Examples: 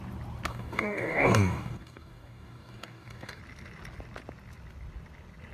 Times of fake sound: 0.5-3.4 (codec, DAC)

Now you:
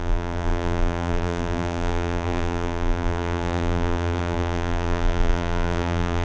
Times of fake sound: 0.0-6.2 (vocoder, BigVGAN v2)

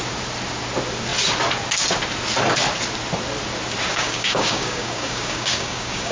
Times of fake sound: 3.9-6.1 (codec, DAC)

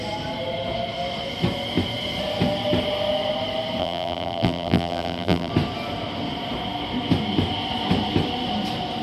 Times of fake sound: 3.8-5.5 (vocoder, BigVGAN v2)

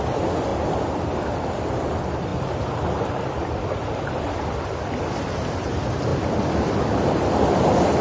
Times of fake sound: none